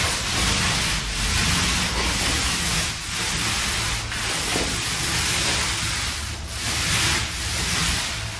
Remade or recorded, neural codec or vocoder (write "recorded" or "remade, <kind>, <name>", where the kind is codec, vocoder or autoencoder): recorded